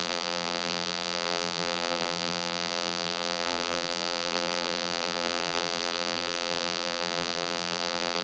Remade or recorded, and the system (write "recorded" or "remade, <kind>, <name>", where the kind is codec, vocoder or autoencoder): remade, vocoder, BigVGAN v2